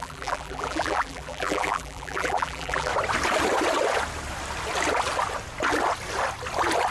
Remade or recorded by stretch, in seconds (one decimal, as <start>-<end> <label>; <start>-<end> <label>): 0.0-2.9 remade; 2.9-6.9 recorded